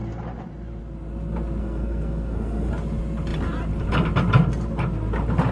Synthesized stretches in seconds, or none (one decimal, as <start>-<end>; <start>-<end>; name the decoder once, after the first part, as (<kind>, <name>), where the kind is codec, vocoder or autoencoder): 1.6-2.7 (codec, SNAC)